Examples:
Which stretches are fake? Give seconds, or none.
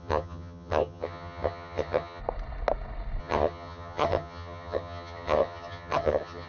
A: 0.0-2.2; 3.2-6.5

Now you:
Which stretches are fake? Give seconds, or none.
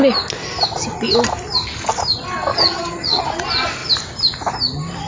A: 2.5-3.2